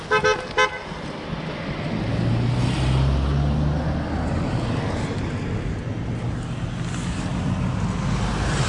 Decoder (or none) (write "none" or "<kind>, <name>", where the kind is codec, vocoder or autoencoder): none